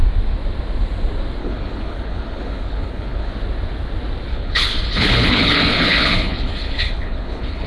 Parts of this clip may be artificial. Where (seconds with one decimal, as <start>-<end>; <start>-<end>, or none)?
1.4-3.3; 4.3-7.7

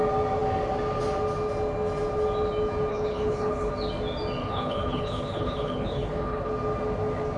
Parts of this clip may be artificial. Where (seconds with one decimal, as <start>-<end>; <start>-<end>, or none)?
2.9-3.7; 4.4-6.5